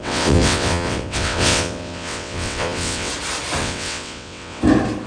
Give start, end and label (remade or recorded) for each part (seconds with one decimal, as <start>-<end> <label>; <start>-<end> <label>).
0.0-3.1 remade; 3.1-3.6 recorded; 3.6-4.6 remade; 4.6-5.1 recorded